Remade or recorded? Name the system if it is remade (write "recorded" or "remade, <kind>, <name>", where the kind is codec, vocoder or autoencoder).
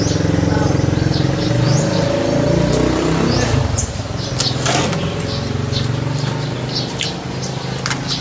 recorded